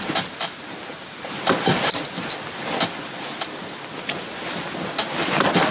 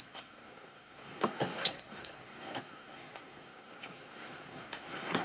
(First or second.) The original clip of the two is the first